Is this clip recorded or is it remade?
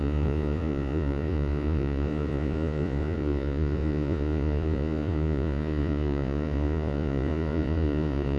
remade